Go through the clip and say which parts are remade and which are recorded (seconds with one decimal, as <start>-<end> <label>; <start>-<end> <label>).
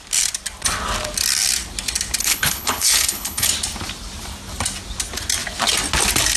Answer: 0.0-2.2 recorded; 2.2-3.5 remade; 3.5-6.4 recorded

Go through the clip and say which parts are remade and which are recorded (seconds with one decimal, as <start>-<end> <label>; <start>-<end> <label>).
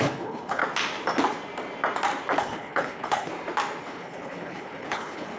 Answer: 0.0-0.6 remade; 0.6-2.4 recorded; 2.4-3.3 remade; 3.3-3.8 recorded; 3.8-5.4 remade